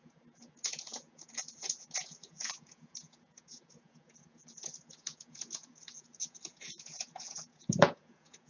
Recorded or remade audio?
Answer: remade